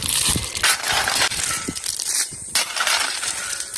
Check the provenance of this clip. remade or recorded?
remade